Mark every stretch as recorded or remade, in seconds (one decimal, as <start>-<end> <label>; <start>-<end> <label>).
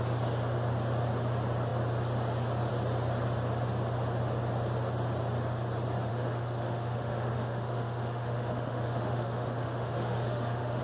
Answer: 0.0-6.1 recorded; 6.1-10.8 remade